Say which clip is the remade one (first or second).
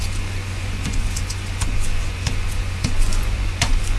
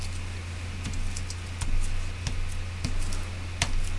first